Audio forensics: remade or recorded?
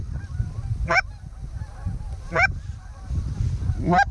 recorded